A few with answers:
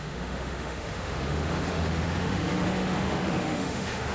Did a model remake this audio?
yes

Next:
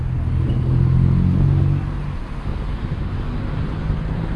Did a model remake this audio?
no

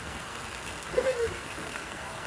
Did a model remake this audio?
yes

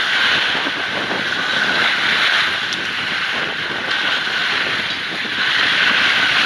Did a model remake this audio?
no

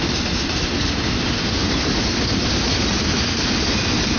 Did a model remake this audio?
no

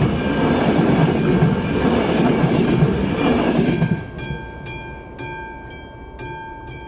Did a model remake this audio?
no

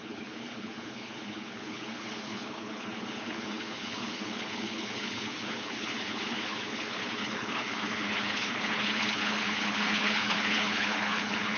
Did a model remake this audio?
yes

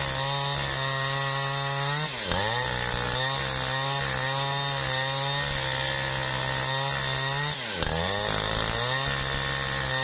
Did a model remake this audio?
no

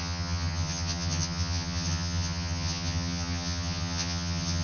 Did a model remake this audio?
yes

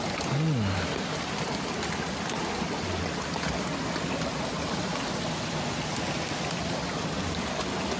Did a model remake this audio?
no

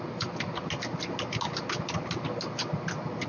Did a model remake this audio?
no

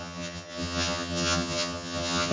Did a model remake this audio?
yes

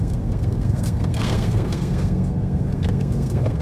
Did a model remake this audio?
yes